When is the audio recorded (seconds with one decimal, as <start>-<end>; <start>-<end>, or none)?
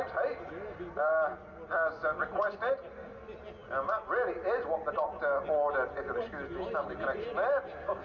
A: 0.0-8.0